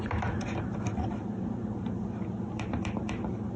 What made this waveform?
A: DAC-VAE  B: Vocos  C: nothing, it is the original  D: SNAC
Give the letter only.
C